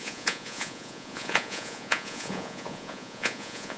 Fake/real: fake